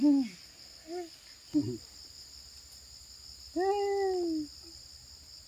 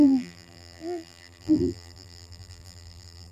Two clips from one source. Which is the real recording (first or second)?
first